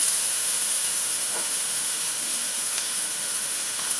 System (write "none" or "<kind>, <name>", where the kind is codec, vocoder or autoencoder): autoencoder, DAC-VAE